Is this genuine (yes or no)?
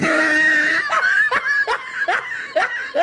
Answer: yes